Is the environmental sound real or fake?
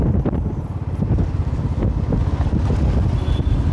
real